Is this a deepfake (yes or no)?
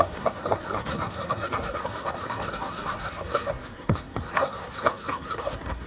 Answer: yes